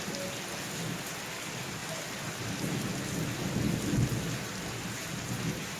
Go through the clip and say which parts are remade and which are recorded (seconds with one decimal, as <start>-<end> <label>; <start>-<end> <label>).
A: 0.0-5.8 recorded